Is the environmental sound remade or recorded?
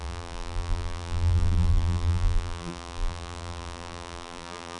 remade